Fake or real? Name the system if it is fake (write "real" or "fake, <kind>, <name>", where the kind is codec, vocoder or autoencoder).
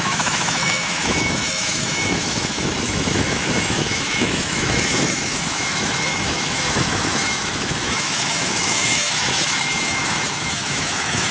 fake, autoencoder, DAC-VAE